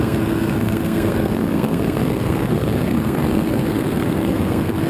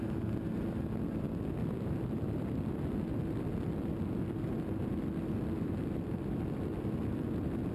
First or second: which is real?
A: second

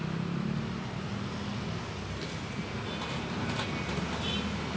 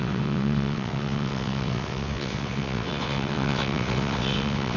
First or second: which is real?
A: first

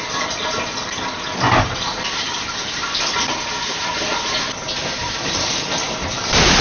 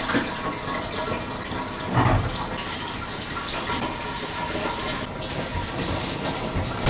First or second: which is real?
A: second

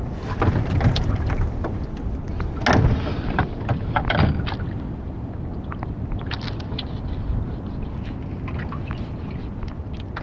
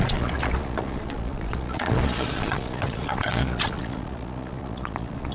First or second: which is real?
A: first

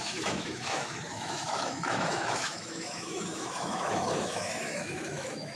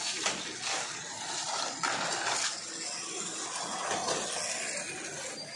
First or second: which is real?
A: second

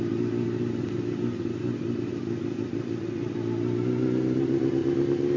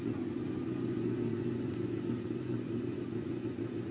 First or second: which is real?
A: first